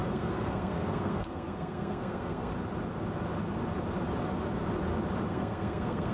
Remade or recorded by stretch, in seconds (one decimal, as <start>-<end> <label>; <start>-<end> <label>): 0.0-2.5 remade; 2.5-5.3 recorded; 5.3-6.1 remade